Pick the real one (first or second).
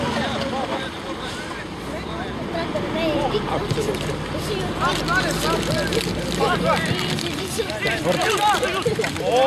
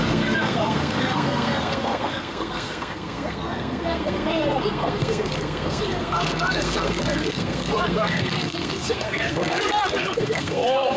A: first